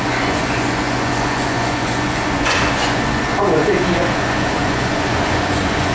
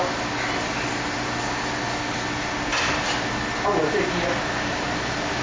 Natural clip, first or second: second